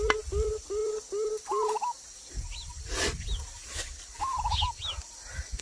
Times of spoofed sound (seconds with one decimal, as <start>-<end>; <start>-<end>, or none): none